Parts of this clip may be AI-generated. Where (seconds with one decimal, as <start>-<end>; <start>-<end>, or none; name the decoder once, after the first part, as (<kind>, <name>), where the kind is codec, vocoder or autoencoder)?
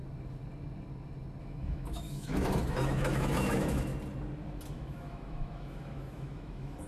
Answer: 1.4-3.9 (autoencoder, DAC-VAE); 4.7-6.9